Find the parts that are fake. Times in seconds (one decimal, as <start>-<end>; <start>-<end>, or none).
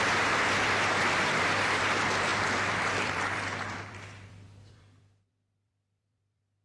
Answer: 0.0-6.6